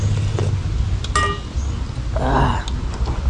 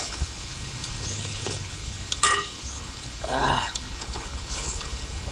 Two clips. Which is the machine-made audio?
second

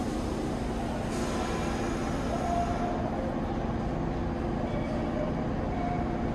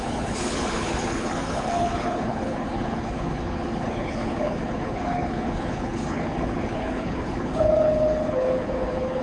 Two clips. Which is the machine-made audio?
second